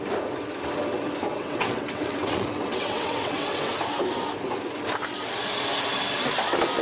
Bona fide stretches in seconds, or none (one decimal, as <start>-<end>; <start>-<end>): 0.0-1.3; 3.7-6.8